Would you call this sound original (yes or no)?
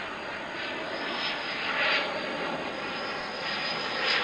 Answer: yes